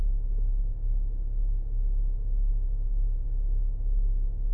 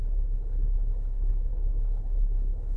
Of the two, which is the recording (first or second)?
first